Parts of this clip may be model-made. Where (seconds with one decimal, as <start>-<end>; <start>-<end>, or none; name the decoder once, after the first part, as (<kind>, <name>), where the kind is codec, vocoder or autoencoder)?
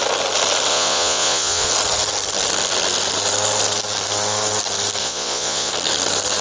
0.7-1.7 (vocoder, Vocos); 5.0-5.7